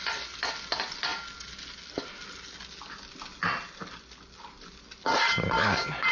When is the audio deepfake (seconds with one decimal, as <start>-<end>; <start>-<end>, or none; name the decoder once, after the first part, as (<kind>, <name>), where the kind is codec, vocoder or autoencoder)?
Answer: none